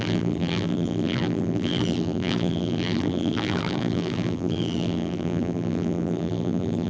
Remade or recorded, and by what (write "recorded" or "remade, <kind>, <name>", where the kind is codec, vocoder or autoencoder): remade, vocoder, BigVGAN v2